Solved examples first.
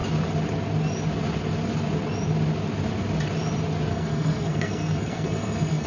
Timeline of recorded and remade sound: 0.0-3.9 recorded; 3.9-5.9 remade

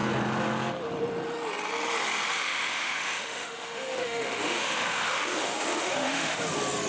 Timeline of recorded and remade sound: 0.0-2.3 recorded; 2.3-6.4 remade; 6.4-6.9 recorded

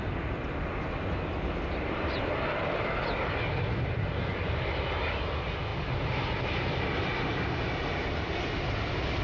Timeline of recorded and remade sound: 0.0-9.2 recorded

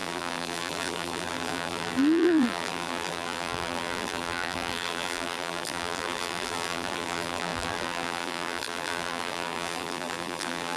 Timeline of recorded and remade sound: 0.0-10.8 remade

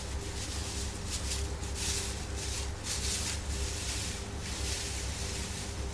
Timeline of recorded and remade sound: 0.0-5.9 recorded

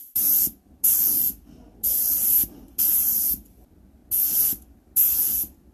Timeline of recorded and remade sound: 0.0-2.8 recorded; 2.8-4.0 remade; 4.0-5.7 recorded

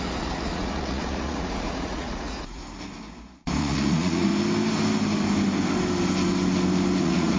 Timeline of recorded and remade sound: 0.0-2.6 remade; 2.6-3.6 recorded; 3.6-4.3 remade; 4.3-7.0 recorded; 7.0-7.4 remade